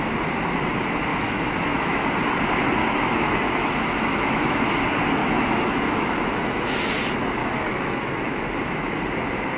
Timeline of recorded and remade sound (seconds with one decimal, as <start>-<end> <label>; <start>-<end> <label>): 0.0-1.1 recorded; 1.1-2.1 remade; 2.1-2.8 recorded; 2.8-4.6 remade; 4.6-5.2 recorded; 5.2-6.9 remade; 6.9-7.4 recorded; 7.4-9.0 remade; 9.0-9.6 recorded